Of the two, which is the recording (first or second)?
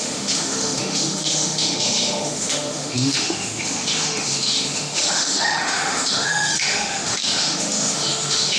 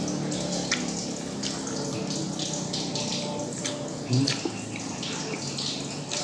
second